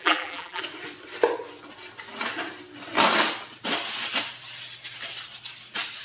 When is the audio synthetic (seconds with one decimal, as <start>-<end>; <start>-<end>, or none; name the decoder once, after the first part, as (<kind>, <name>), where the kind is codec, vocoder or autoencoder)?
0.0-0.6 (vocoder, BigVGAN v2)